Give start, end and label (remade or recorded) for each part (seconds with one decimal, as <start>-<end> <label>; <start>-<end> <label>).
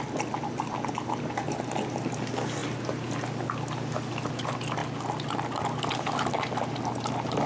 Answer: 0.0-7.5 recorded